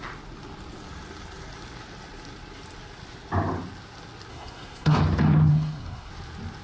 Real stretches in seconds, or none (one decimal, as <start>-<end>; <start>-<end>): 0.0-4.3; 5.0-5.5; 6.1-6.6